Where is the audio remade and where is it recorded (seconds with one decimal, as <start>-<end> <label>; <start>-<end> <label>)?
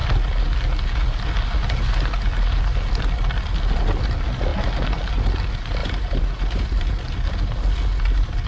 0.0-5.8 recorded; 5.8-6.9 remade; 6.9-8.5 recorded